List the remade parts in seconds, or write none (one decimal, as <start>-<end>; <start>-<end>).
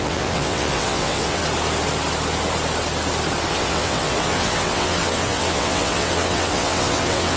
0.0-1.4; 3.5-7.4